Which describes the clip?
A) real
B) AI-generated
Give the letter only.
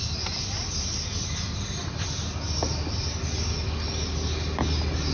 A